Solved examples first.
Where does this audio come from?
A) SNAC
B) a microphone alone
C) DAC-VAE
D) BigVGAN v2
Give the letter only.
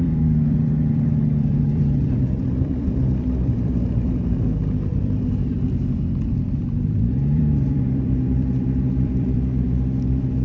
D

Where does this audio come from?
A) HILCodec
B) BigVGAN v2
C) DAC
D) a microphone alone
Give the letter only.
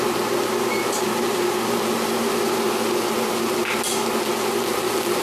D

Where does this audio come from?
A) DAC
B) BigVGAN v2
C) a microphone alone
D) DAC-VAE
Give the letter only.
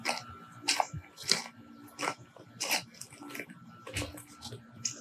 B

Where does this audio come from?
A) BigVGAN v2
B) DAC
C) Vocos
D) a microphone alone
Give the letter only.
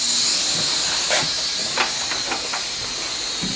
D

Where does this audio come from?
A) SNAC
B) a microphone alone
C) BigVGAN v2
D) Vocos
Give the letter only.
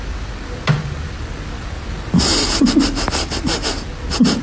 B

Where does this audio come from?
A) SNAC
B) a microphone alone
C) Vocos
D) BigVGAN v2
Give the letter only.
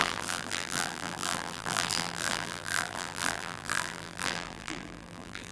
D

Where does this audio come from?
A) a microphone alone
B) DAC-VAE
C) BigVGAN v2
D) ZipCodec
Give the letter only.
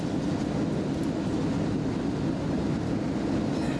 A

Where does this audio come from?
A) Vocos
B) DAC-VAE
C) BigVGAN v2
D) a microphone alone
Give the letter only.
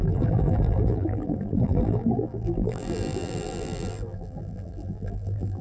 C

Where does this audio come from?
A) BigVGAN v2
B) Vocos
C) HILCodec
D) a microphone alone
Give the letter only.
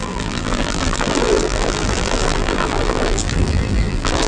A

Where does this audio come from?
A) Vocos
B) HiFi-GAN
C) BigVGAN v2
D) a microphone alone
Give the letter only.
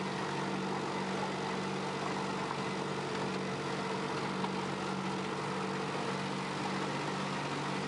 D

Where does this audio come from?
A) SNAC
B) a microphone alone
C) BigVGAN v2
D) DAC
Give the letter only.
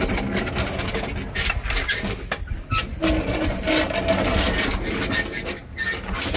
B